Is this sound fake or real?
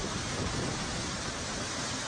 fake